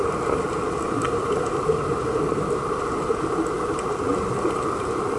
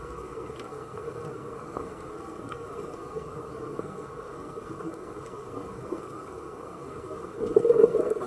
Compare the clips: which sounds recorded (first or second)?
first